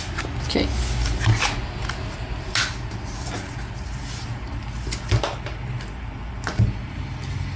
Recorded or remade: recorded